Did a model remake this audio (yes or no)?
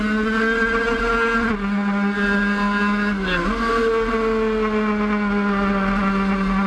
no